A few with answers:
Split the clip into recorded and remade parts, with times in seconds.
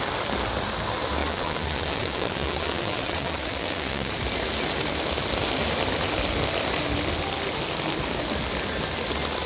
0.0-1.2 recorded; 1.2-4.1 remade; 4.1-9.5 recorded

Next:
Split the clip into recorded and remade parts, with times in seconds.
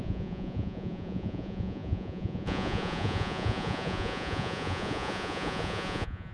0.0-6.3 remade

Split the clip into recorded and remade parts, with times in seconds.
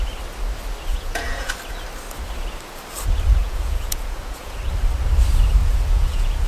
0.0-0.9 recorded; 0.9-1.5 remade; 1.5-3.4 recorded; 3.4-4.7 remade; 4.7-5.6 recorded; 5.6-6.5 remade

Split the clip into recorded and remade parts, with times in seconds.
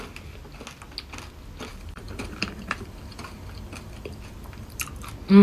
0.0-1.7 recorded; 1.7-4.8 remade; 4.8-5.4 recorded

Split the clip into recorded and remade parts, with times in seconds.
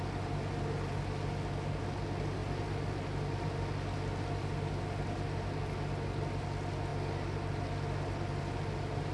0.0-9.1 recorded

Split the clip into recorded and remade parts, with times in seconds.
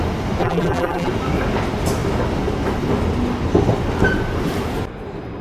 0.0-0.4 recorded; 0.4-1.1 remade; 1.1-5.4 recorded